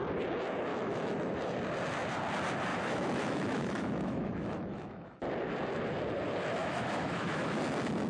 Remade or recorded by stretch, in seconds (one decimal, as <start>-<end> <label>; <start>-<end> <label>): 0.0-0.7 recorded; 0.7-1.3 remade; 1.3-2.7 recorded; 2.7-5.2 remade; 5.2-6.6 recorded; 6.6-7.6 remade; 7.6-8.1 recorded